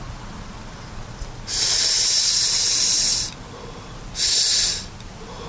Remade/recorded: recorded